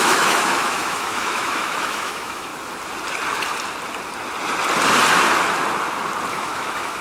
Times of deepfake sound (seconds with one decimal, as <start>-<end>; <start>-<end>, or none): 0.0-2.5; 6.3-7.0